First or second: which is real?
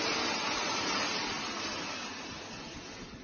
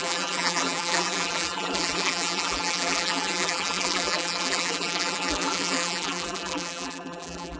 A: first